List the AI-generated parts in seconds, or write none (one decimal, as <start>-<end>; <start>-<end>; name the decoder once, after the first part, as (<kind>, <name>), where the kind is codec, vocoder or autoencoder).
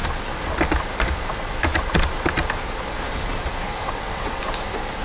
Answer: 3.8-4.4 (vocoder, WaveNeXt)